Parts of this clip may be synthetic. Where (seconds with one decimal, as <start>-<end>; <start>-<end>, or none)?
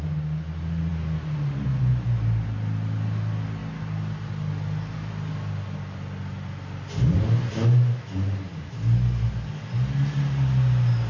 none